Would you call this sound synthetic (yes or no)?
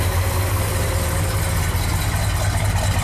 no